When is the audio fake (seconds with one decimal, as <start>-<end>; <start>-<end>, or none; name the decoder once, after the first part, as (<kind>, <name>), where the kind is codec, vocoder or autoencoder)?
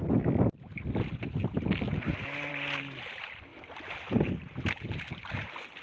none